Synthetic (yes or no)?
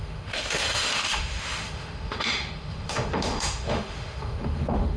yes